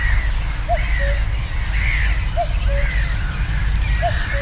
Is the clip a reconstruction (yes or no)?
no